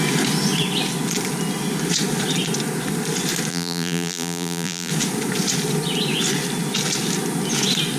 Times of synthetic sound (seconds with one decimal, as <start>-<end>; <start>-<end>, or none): 3.5-4.9

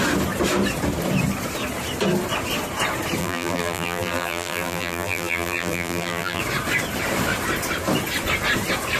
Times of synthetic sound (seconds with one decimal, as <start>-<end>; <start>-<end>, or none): 3.2-6.4

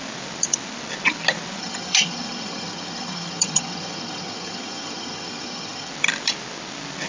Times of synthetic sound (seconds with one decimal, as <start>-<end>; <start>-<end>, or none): 1.6-5.9